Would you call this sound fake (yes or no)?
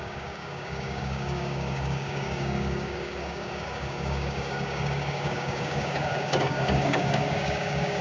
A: yes